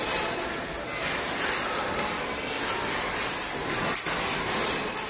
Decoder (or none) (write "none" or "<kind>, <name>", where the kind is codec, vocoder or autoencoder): none